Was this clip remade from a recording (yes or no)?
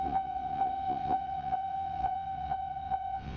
yes